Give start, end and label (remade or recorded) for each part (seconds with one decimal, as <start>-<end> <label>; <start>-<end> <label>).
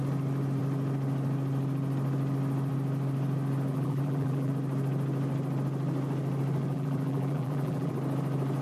0.0-3.7 recorded; 3.7-4.5 remade; 4.5-6.7 recorded; 6.7-7.9 remade; 7.9-8.6 recorded